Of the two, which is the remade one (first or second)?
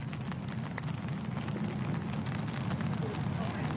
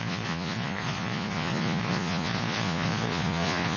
second